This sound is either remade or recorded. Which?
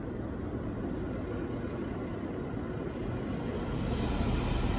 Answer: recorded